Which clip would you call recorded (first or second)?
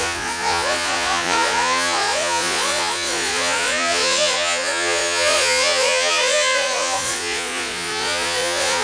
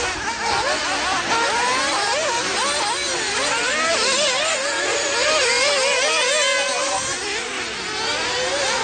second